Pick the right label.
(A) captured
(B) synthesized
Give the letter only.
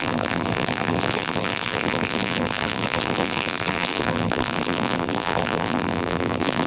B